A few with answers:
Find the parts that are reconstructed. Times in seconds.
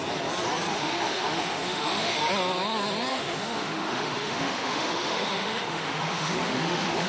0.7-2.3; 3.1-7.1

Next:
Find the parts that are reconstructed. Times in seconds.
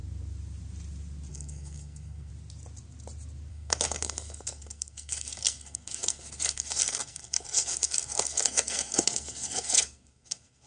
1.3-2.3; 3.5-10.7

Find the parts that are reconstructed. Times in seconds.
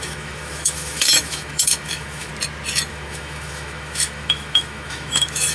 0.0-2.3; 2.9-5.5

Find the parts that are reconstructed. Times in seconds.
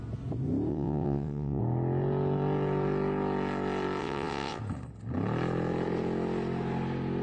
0.7-1.6; 4.0-4.6